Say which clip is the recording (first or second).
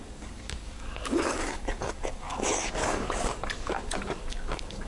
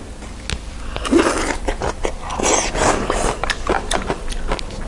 second